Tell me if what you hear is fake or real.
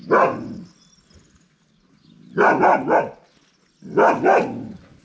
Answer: real